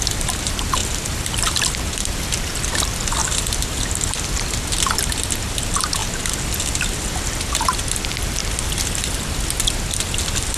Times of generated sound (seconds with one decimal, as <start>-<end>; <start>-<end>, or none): 0.8-1.9